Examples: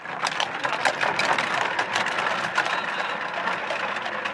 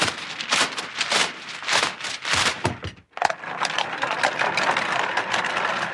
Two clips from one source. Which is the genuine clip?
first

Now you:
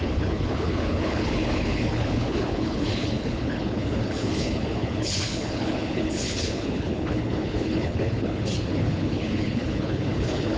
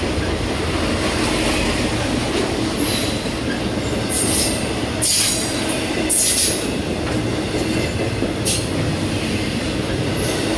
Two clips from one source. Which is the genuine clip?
second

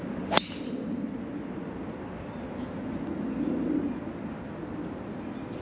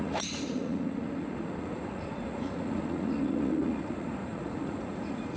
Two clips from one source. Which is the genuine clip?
first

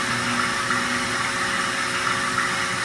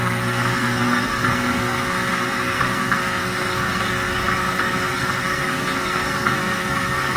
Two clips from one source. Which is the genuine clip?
first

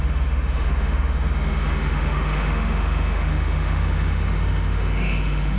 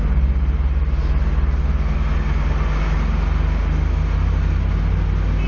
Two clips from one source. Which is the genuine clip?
second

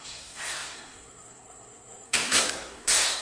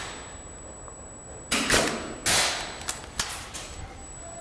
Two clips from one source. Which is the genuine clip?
second